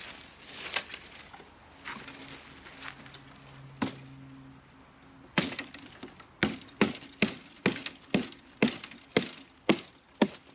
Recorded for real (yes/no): yes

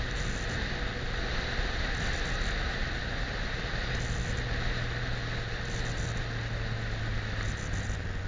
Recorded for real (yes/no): yes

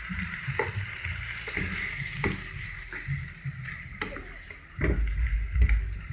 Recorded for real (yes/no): yes